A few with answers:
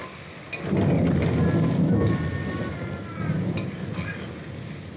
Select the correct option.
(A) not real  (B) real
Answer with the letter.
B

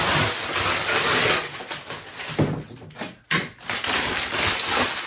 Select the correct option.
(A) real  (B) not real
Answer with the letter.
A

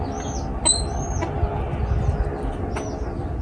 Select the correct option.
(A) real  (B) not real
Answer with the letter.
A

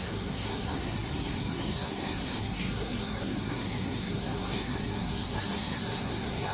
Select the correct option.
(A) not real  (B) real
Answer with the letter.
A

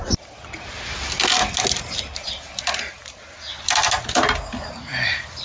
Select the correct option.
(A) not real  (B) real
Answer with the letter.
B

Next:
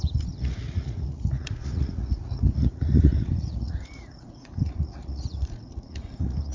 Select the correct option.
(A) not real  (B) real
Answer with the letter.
A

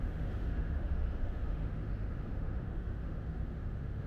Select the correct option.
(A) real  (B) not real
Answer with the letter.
B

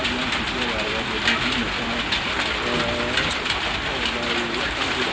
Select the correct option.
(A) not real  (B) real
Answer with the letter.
B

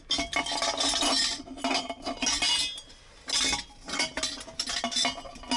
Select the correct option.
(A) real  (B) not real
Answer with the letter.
A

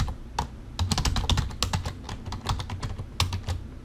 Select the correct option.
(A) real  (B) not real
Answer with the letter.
A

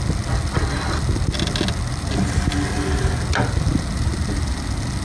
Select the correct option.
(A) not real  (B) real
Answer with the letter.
B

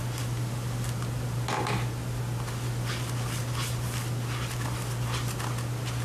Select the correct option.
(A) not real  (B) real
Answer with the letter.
B